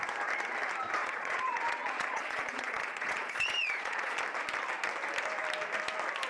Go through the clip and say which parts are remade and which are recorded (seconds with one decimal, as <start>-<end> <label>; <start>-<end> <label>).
0.0-1.0 recorded; 1.0-4.2 remade; 4.2-6.3 recorded